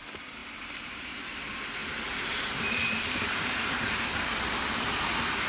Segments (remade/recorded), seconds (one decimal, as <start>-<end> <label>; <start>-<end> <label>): 0.0-0.4 recorded; 0.4-1.1 remade; 1.1-1.8 recorded; 1.8-5.1 remade; 5.1-5.5 recorded